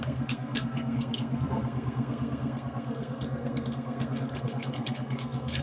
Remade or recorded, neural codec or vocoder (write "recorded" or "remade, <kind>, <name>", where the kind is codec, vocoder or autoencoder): remade, codec, SNAC